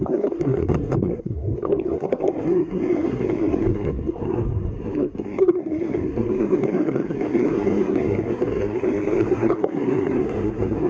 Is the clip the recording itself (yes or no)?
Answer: no